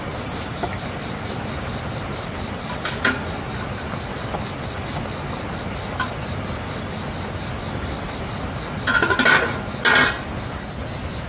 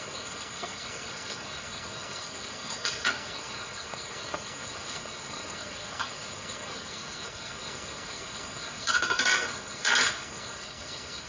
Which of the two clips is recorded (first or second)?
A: first